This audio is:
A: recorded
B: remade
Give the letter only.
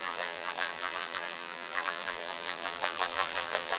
B